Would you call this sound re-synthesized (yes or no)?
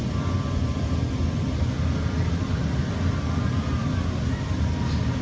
no